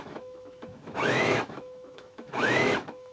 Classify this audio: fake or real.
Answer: fake